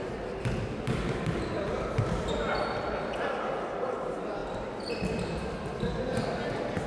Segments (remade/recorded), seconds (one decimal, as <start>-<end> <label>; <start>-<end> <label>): 0.0-0.9 recorded; 0.9-4.4 remade; 4.4-5.0 recorded; 5.0-6.9 remade